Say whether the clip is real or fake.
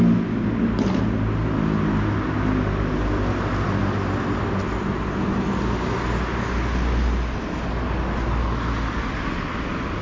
real